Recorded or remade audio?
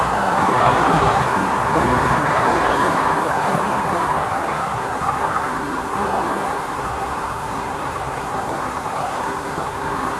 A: remade